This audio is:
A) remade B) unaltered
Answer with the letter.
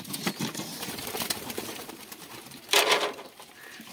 A